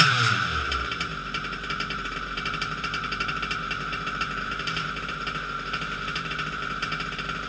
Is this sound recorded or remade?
remade